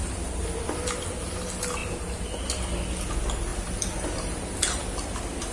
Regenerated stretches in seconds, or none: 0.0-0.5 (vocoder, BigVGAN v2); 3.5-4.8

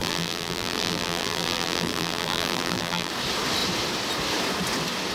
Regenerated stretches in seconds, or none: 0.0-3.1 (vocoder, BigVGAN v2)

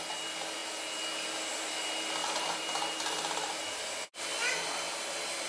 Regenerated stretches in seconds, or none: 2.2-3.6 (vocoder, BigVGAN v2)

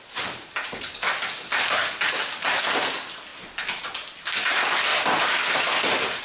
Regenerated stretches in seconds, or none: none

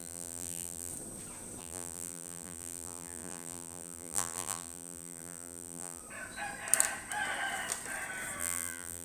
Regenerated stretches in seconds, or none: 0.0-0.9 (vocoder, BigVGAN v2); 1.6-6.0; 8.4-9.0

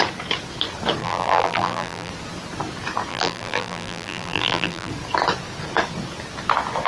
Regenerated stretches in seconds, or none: 1.0-2.1 (vocoder, BigVGAN v2); 3.1-4.9